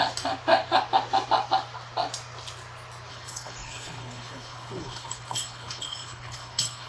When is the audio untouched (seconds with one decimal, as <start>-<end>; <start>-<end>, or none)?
0.0-3.1